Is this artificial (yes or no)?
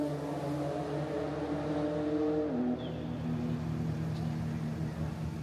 no